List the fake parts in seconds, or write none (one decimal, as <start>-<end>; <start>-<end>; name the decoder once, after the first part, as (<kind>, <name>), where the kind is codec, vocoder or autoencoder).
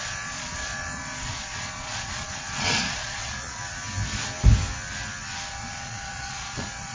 0.0-3.6 (vocoder, Vocos); 5.5-6.9